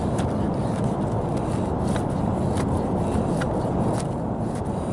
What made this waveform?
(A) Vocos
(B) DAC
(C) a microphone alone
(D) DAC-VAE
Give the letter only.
C